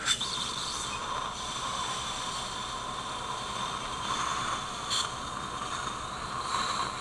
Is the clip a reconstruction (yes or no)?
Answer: yes